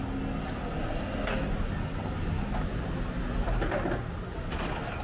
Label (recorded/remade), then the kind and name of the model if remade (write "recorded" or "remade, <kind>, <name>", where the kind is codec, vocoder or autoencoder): recorded